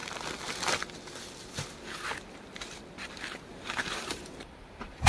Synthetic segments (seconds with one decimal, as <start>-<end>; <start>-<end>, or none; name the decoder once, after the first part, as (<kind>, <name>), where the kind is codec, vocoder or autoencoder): 3.5-5.1 (vocoder, BigVGAN v2)